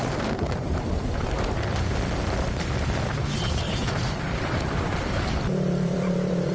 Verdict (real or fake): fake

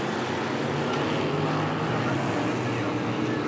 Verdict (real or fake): real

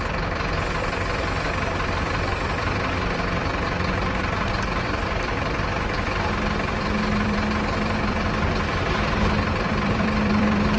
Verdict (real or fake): fake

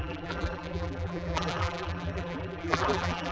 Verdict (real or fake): fake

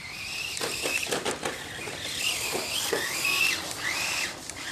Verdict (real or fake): real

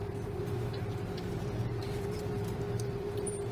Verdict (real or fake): fake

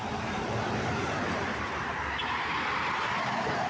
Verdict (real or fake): fake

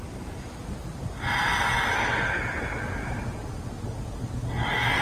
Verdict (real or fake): real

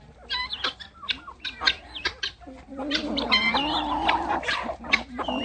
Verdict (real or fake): fake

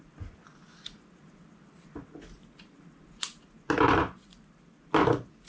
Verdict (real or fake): real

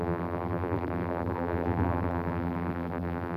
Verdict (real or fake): fake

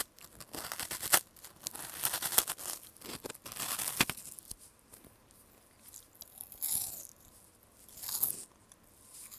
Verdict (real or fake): real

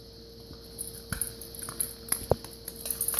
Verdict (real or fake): real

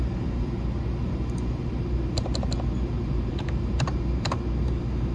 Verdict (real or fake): fake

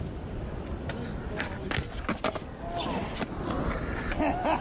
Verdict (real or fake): real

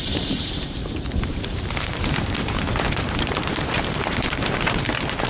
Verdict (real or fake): fake